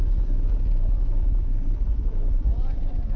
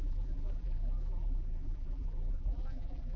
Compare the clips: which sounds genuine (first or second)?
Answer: first